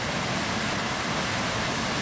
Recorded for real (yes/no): yes